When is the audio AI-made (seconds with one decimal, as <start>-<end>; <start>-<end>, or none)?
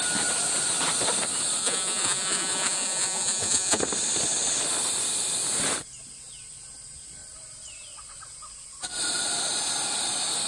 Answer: 1.6-3.8